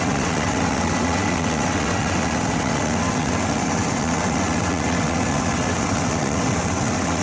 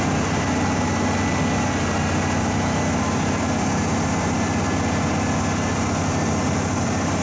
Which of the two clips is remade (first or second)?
first